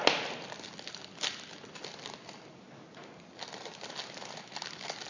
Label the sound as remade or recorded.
recorded